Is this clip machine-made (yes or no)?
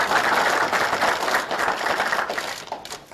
no